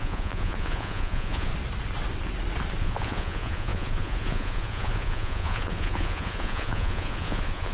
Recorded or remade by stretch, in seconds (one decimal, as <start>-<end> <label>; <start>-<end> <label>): 0.0-1.5 remade; 1.5-2.8 recorded; 2.8-7.7 remade